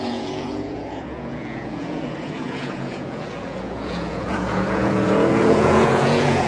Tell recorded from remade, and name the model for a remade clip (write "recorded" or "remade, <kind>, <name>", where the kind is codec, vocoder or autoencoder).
remade, vocoder, Vocos